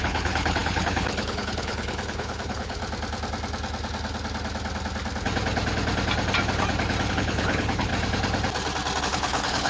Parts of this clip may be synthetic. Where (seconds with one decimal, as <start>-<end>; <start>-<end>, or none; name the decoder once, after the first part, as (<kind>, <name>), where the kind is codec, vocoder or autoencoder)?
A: 0.0-2.8 (codec, HILCodec); 7.1-7.9; 9.0-9.7